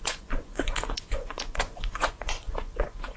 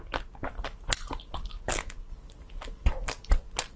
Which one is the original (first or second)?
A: second